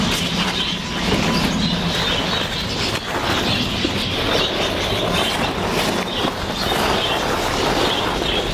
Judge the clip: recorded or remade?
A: recorded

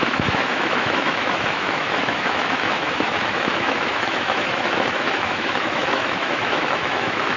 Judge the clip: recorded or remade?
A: remade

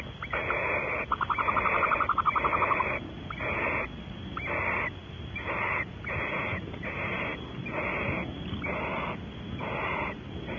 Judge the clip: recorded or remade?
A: recorded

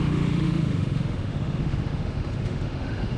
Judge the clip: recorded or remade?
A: remade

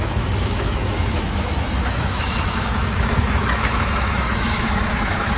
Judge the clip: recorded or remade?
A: remade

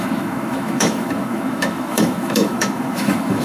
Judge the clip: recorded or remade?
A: remade